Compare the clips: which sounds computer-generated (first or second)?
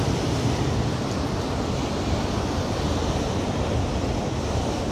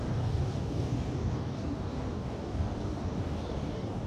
second